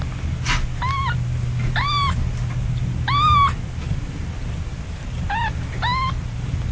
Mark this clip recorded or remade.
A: recorded